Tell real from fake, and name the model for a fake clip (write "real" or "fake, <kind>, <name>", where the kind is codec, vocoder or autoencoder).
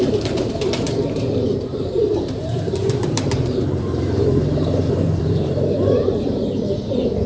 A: fake, vocoder, BigVGAN v2